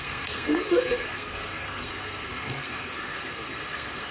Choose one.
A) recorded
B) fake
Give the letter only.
B